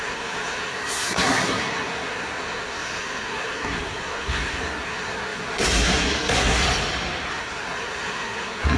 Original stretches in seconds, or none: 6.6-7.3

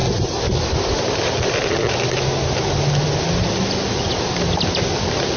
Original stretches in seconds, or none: 0.0-5.4

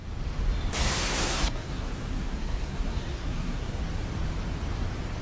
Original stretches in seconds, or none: 0.0-0.7; 3.8-5.2

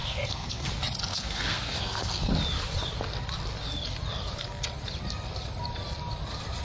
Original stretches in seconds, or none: 0.7-1.1; 2.3-6.6

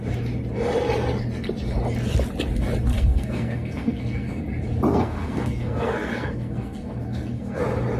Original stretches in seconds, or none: 0.0-2.9; 4.4-4.9; 7.6-8.0

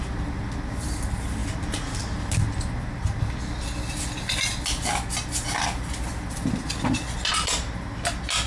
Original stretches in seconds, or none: 0.0-8.5